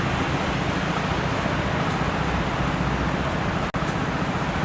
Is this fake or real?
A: real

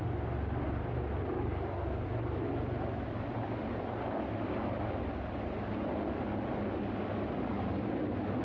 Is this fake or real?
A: real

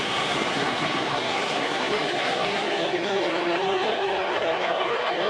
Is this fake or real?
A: fake